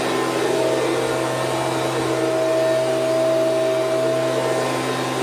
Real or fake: real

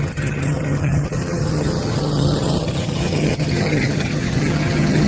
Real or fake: fake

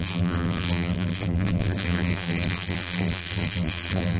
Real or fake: fake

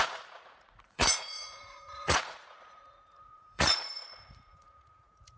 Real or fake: fake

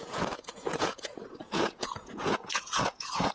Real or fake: fake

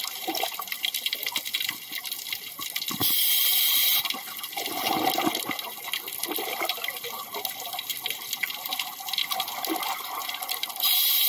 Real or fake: real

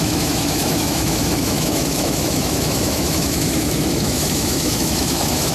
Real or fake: fake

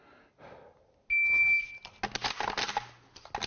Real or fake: real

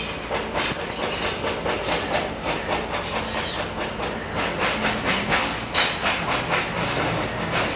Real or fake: real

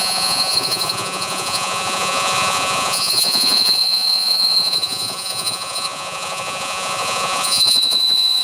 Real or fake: fake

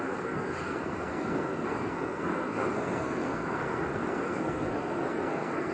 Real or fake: fake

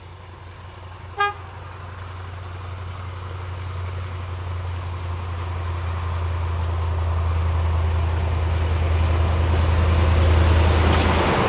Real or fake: real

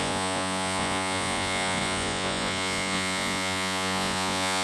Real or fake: fake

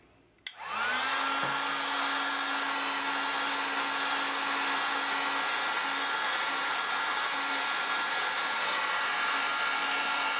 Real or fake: real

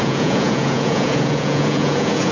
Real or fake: fake